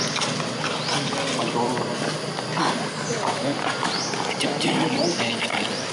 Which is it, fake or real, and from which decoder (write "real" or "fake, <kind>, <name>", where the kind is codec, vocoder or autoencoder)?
real